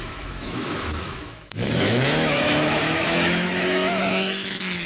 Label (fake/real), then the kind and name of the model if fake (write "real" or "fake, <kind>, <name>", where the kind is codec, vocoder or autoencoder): fake, autoencoder, DAC-VAE